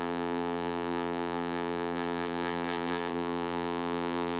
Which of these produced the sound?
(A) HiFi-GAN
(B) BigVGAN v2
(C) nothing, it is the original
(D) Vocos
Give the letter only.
B